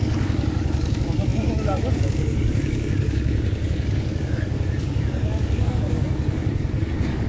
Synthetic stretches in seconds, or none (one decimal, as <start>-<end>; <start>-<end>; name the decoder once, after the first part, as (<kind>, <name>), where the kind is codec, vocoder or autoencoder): 0.0-7.3 (codec, DAC)